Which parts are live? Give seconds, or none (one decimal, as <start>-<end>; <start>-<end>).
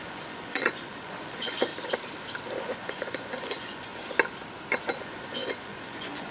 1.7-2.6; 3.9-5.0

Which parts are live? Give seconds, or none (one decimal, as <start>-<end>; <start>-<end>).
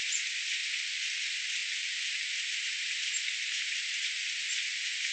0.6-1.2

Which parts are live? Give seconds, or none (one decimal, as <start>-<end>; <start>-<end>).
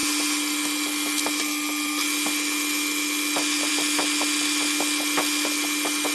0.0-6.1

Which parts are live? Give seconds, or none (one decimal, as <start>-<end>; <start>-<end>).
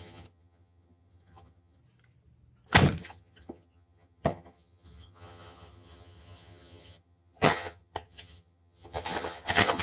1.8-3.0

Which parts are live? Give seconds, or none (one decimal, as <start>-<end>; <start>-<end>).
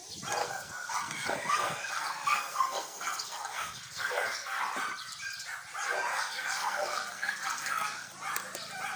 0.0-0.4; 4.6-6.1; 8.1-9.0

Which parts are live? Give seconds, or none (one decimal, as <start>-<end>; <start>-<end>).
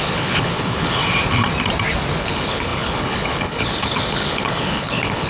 1.0-2.2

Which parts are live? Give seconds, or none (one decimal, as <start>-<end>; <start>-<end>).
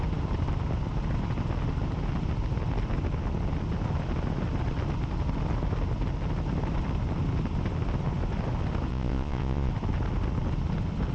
0.0-8.9; 9.7-11.1